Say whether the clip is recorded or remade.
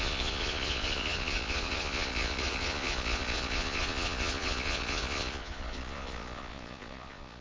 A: remade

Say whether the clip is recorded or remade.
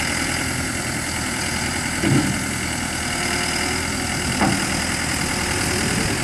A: recorded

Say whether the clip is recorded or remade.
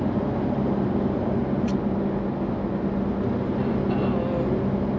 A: recorded